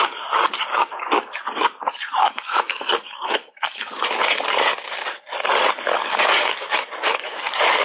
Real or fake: fake